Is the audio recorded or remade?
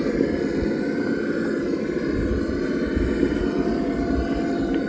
recorded